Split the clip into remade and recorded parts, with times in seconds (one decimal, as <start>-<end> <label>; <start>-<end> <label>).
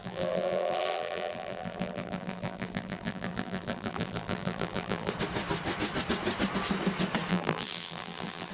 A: 0.0-5.1 remade; 5.1-7.3 recorded; 7.3-8.5 remade